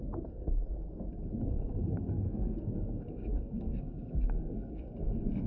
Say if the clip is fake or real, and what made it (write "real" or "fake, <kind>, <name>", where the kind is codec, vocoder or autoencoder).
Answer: fake, codec, SNAC